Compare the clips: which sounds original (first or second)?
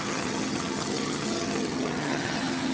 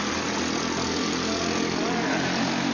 second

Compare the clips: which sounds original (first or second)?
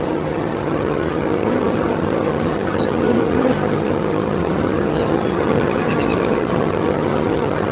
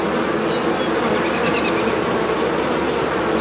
second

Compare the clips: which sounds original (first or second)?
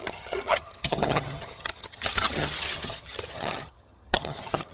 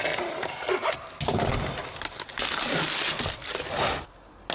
second